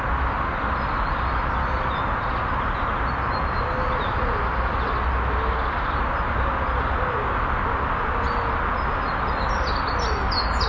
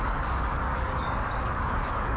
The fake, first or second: second